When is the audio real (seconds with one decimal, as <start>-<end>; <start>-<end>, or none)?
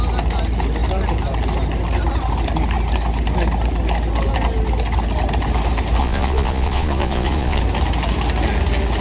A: 0.0-6.0; 7.6-9.0